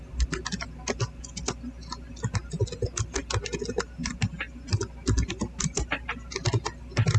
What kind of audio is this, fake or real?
real